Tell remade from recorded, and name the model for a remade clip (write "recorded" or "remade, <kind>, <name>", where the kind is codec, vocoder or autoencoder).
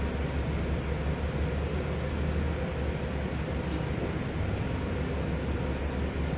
recorded